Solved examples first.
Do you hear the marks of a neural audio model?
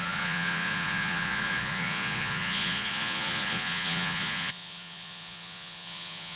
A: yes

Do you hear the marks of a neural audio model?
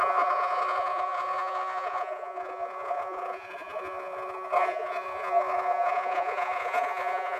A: yes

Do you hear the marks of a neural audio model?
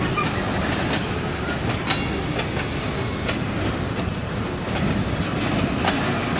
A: no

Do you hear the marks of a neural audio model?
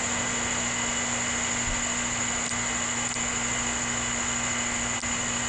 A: no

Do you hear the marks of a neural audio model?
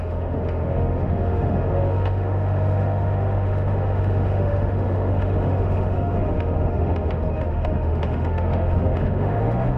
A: yes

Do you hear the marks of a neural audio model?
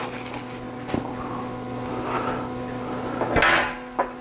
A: no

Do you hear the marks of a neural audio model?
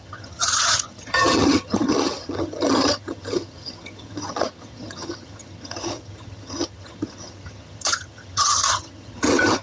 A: yes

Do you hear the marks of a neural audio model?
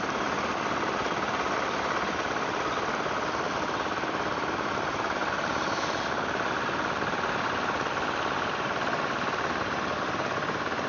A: yes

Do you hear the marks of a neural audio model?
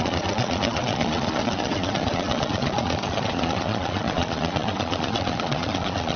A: yes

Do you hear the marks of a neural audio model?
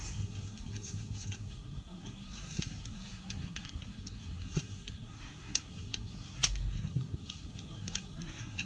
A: yes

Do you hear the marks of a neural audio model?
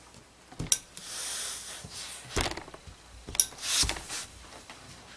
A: no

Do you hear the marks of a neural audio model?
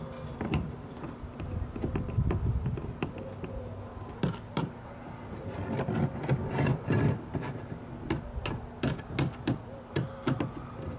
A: no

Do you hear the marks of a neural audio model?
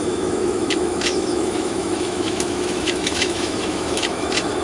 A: yes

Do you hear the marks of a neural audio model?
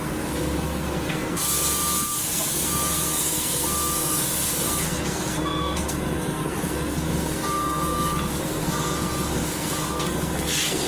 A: yes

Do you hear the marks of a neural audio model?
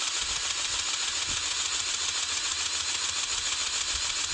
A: no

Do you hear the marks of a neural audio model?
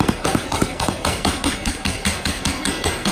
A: yes